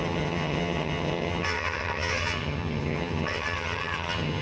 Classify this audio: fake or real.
fake